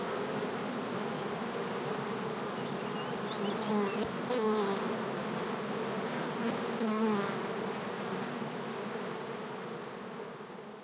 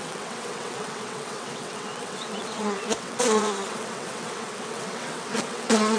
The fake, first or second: second